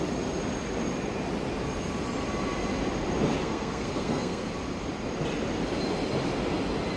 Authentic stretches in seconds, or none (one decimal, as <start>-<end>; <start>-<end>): 0.0-3.4; 4.5-7.0